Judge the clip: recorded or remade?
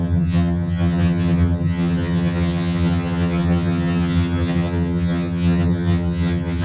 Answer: remade